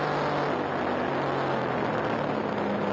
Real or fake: real